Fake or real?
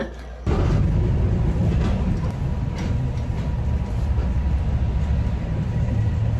real